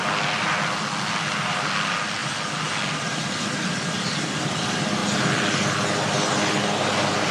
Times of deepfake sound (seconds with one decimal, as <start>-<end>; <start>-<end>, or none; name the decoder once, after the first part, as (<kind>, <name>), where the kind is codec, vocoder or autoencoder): none